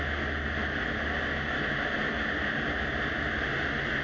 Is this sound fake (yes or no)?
no